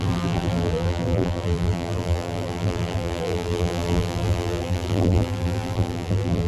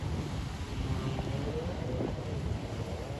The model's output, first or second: first